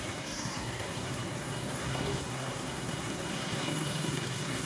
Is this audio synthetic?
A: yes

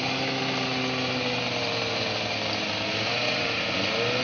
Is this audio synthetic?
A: no